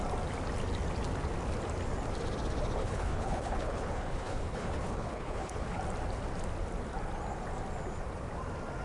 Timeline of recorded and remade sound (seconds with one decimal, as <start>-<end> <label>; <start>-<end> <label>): 0.0-2.8 recorded; 2.8-5.8 remade; 5.8-8.8 recorded